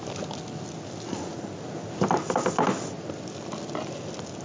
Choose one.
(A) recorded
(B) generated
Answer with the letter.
A